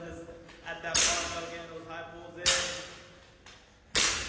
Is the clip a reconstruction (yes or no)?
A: no